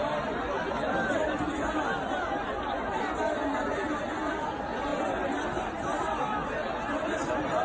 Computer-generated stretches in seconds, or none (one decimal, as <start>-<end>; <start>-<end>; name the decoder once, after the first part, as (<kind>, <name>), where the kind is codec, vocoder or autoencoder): none